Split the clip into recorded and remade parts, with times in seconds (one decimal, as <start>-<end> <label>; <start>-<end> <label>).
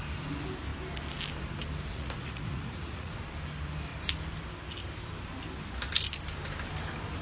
0.0-1.9 recorded; 1.9-3.2 remade; 3.2-7.2 recorded